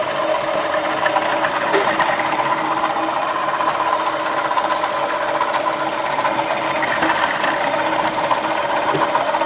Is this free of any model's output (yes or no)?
yes